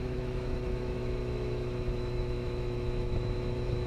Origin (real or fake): fake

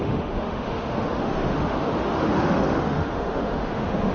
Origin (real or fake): fake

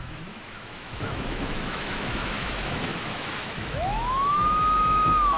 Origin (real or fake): fake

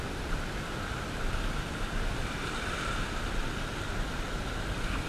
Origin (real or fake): real